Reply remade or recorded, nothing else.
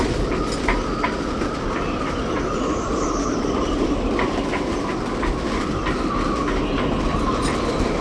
recorded